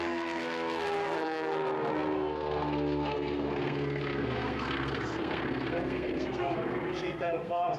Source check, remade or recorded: remade